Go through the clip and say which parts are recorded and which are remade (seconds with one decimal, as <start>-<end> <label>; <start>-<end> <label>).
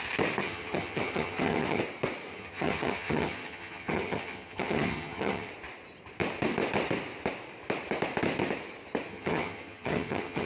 0.0-0.4 recorded; 0.4-1.8 remade; 1.8-2.3 recorded; 2.3-5.5 remade; 5.5-9.1 recorded; 9.1-10.5 remade